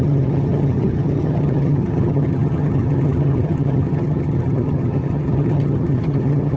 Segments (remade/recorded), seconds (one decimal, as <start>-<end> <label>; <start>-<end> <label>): 0.0-6.6 remade